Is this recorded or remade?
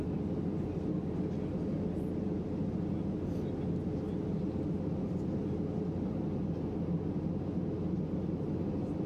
recorded